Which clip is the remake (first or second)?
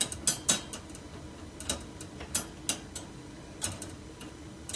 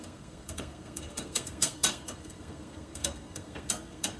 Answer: second